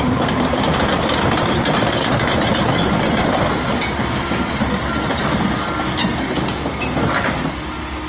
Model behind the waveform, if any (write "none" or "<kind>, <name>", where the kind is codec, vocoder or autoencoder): none